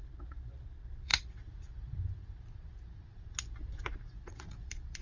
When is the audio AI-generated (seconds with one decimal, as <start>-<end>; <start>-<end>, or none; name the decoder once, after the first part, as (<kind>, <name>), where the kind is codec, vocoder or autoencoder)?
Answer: 0.0-1.1 (vocoder, Vocos); 4.1-5.0